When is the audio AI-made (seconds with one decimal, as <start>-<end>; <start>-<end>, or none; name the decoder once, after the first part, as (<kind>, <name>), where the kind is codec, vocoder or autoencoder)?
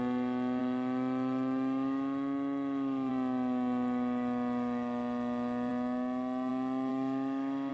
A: 0.6-3.1 (autoencoder, DAC-VAE); 6.9-7.7